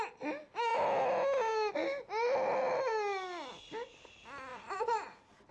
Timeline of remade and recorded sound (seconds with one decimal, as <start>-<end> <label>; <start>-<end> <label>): 0.0-4.5 recorded; 4.5-5.5 remade